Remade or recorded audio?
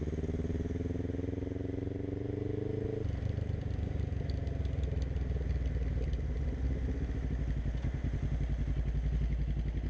recorded